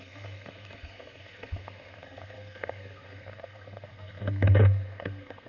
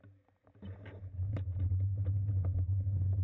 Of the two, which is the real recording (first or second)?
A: second